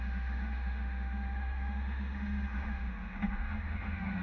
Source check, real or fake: fake